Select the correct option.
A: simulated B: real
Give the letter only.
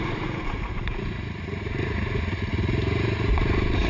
A